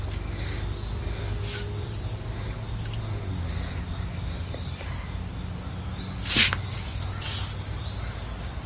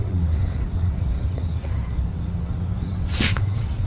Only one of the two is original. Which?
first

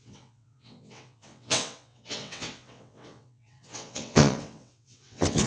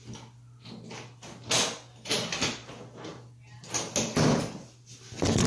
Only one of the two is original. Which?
second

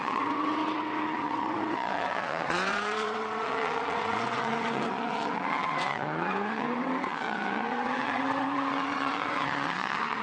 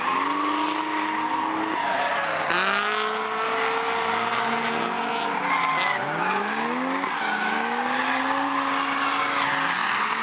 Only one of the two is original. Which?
second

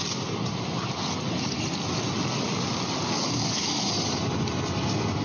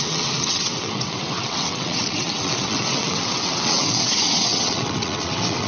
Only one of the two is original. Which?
first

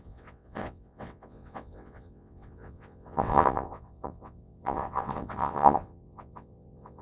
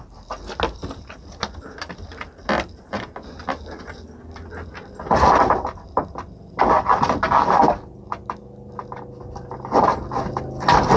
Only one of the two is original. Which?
second